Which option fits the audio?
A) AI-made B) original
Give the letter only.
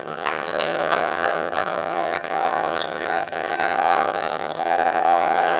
A